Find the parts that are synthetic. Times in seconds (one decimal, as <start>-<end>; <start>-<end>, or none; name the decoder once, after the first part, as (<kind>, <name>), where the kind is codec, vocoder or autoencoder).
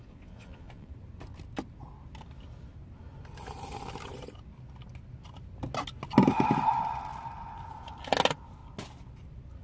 0.0-0.9 (vocoder, Vocos)